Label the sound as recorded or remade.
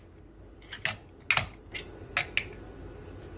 recorded